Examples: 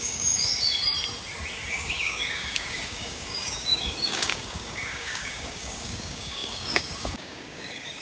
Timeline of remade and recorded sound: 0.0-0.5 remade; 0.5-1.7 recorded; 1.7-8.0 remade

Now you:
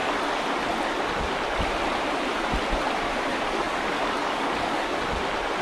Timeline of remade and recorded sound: 0.0-3.3 recorded; 3.3-5.0 remade; 5.0-5.6 recorded

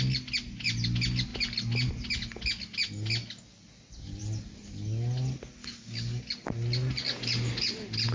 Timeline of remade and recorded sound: 0.0-5.6 recorded; 5.6-6.2 remade; 6.2-8.1 recorded